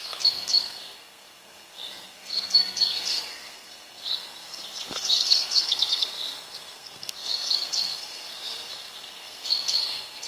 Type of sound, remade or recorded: remade